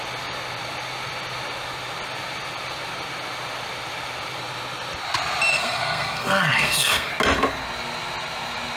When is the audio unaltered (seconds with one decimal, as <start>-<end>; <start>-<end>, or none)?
0.0-5.5; 7.1-8.8